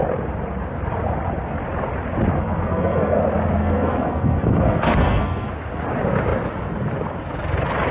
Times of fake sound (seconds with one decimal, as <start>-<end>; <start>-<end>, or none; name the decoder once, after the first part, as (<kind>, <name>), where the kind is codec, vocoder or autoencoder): 2.4-3.2 (codec, SNAC); 3.6-5.5